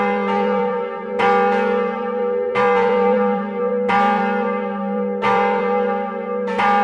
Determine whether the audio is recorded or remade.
remade